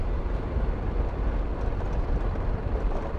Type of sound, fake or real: real